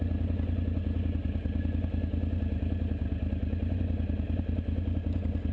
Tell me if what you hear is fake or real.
real